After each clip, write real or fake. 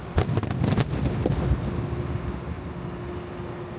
real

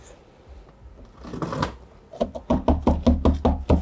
real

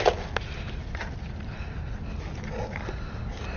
real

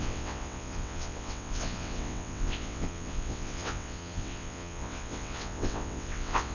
fake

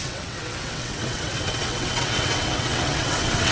fake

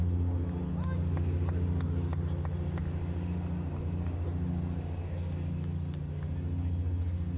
real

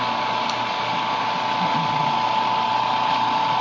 real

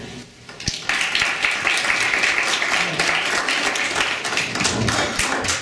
real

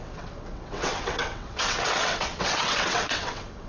fake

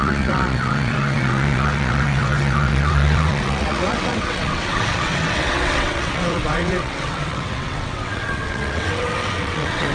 fake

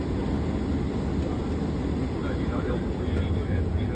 real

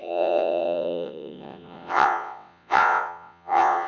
fake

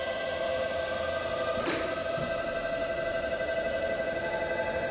real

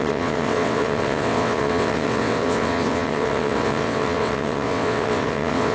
fake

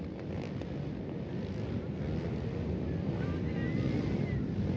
real